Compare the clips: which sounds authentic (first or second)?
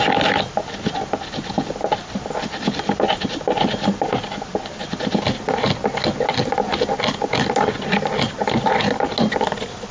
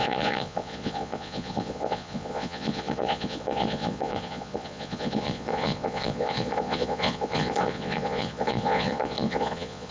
first